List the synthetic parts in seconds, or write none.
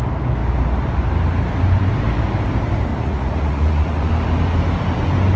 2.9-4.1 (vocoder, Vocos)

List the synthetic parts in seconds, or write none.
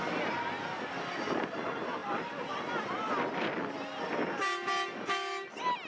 none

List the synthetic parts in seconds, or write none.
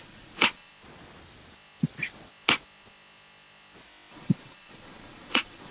0.0-0.7 (vocoder, Vocos); 4.1-5.7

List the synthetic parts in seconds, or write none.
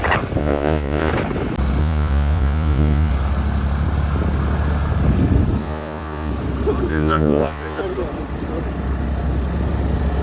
0.4-1.1 (vocoder, Vocos); 1.8-3.1; 5.6-6.3; 6.9-7.8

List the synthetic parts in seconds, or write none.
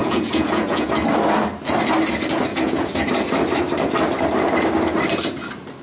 0.0-0.9 (vocoder, Vocos); 2.5-3.1